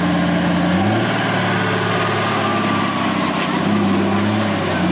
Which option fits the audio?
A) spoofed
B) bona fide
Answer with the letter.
B